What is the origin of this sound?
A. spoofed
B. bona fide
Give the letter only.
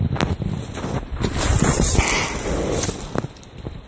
B